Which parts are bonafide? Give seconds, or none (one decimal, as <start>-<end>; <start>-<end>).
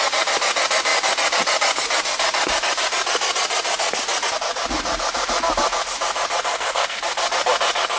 0.0-6.5; 7.0-8.0